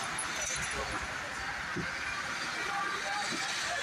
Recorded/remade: recorded